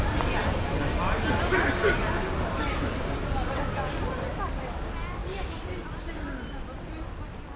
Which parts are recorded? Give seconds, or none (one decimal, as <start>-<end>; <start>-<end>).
0.0-7.6